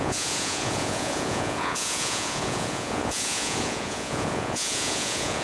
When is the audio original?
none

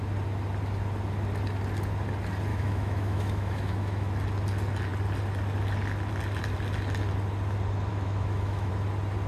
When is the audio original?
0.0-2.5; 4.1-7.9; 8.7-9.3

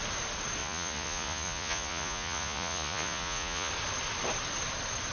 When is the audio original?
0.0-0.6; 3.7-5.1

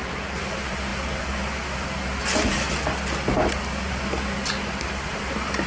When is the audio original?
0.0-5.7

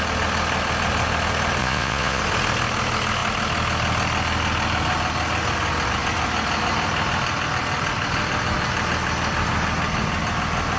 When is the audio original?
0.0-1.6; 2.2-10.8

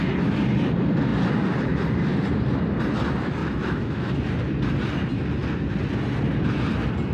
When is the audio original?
0.0-3.4; 4.1-7.1

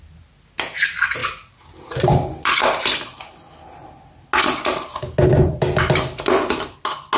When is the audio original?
0.0-7.2